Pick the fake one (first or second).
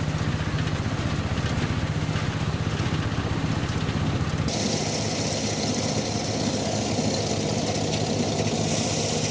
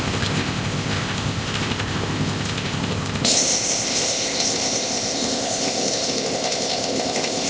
second